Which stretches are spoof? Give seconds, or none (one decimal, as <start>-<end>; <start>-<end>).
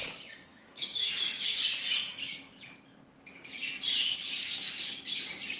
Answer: 0.5-1.6